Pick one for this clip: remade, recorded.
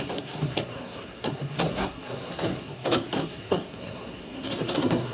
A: remade